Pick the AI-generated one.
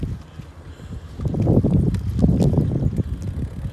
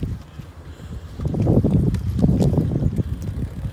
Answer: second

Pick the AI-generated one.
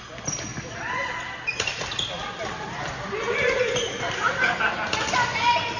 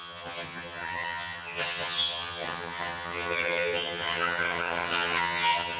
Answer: second